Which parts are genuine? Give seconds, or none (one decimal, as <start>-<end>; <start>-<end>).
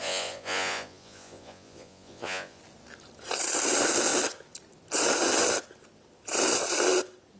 2.6-7.4